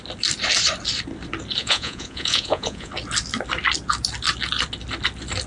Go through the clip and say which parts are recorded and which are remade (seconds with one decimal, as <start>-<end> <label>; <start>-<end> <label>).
0.0-1.6 recorded; 1.6-2.9 remade; 2.9-5.5 recorded